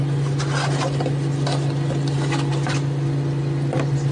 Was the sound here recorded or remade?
recorded